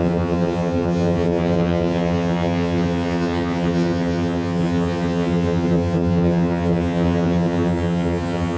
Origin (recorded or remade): remade